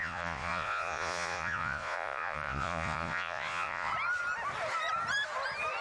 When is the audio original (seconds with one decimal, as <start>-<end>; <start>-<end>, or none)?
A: 3.9-5.8